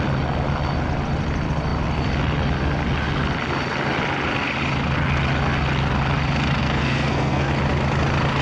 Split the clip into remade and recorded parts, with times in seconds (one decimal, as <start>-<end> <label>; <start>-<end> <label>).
0.0-6.6 recorded; 6.6-7.5 remade; 7.5-8.4 recorded